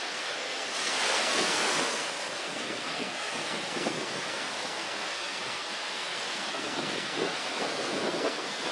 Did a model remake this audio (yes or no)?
yes